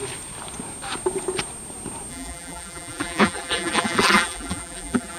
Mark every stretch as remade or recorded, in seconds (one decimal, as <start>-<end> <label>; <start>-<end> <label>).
0.0-2.1 recorded; 2.1-5.2 remade